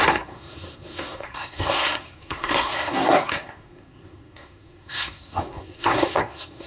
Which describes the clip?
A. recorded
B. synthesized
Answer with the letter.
B